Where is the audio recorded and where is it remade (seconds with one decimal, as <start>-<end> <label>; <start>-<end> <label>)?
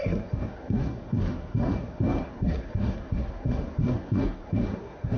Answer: 0.0-5.2 remade